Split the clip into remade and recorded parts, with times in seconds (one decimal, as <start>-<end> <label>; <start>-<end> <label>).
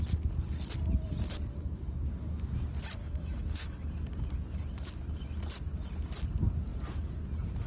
0.0-3.0 recorded; 3.0-3.9 remade; 3.9-7.7 recorded